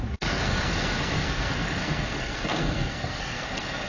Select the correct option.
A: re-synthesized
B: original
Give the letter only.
A